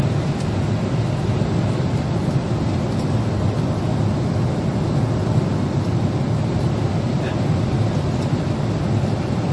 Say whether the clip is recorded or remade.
recorded